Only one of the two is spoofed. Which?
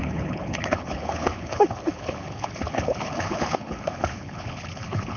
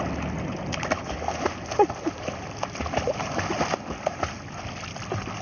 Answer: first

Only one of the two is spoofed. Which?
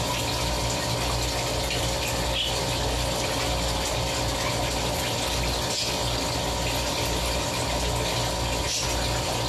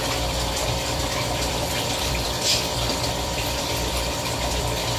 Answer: second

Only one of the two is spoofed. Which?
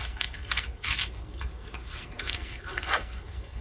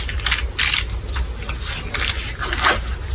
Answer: first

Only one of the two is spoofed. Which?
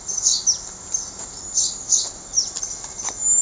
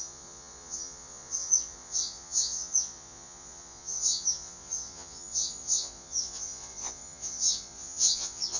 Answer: second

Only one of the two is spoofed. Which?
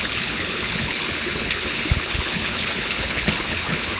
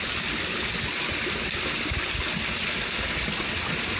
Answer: first